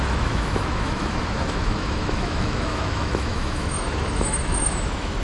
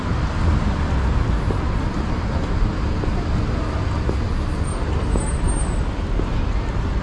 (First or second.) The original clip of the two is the second